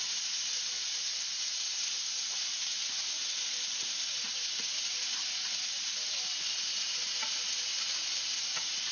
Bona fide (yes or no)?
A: yes